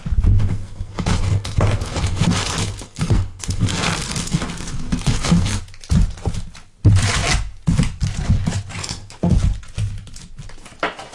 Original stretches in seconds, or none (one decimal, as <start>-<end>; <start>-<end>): 0.0-0.4; 5.6-8.8; 9.3-11.1